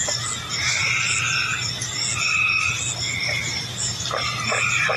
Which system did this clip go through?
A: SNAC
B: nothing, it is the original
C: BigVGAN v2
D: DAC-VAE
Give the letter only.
B